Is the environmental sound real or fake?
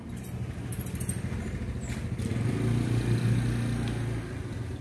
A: real